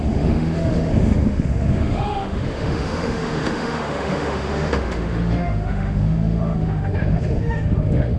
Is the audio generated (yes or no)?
yes